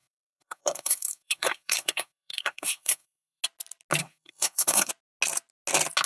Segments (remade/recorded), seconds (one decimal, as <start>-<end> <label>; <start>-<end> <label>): 0.0-3.4 remade; 3.4-4.0 recorded; 4.0-4.9 remade; 4.9-6.1 recorded